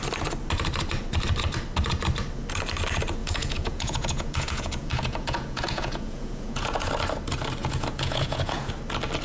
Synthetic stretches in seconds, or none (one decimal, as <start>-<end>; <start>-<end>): 3.2-6.9; 7.6-8.7